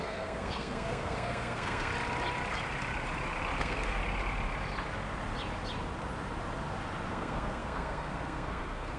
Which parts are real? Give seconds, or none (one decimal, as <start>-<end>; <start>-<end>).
1.9-3.6; 4.0-7.1